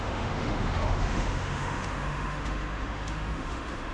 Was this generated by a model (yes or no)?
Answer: yes